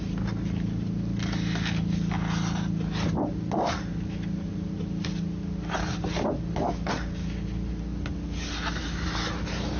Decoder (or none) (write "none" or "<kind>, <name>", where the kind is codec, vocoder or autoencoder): none